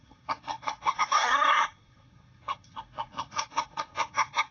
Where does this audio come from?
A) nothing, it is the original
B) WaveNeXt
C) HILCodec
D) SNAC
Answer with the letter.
D